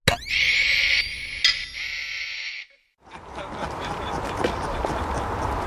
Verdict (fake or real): real